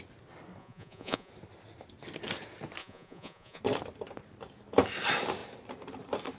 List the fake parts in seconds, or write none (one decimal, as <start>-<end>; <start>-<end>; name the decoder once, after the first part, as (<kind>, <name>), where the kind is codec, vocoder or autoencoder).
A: 0.6-1.3 (vocoder, Vocos); 2.8-3.6

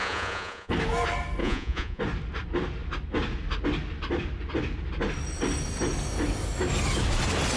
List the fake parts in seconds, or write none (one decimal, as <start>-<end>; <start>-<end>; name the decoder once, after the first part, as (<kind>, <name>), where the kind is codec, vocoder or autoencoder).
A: 0.0-0.7 (vocoder, Vocos); 1.4-2.0

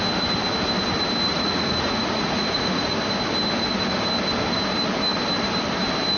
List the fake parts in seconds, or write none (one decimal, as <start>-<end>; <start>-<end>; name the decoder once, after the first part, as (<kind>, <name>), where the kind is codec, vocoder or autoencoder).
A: 1.3-3.0 (vocoder, Vocos)

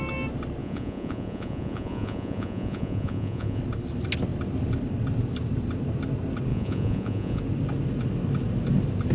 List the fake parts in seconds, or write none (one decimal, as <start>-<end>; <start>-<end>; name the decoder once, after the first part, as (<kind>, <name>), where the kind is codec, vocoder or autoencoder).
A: 0.6-3.6 (vocoder, Vocos); 6.5-7.4

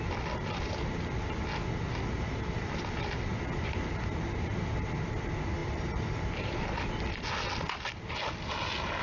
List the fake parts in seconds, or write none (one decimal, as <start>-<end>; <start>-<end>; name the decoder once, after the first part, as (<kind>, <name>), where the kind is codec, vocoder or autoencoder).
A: none